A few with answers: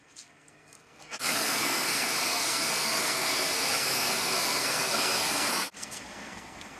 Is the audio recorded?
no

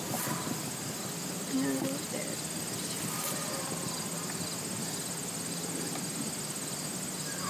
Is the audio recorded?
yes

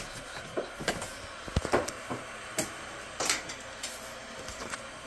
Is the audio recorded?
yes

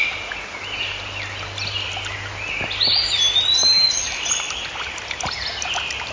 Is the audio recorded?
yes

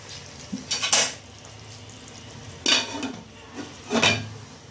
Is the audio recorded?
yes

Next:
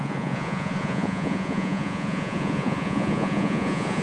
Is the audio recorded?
no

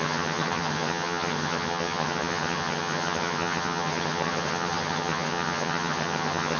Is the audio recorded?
no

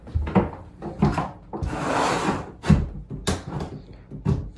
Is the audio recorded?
yes